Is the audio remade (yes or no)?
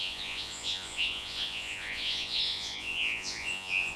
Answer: yes